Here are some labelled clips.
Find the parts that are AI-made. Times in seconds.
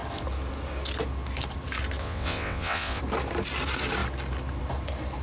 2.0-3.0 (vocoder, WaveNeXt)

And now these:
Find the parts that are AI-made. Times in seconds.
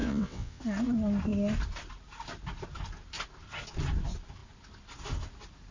0.0-0.6 (vocoder, WaveNeXt)